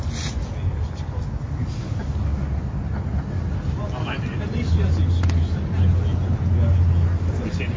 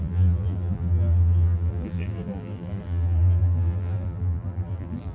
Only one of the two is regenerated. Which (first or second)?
second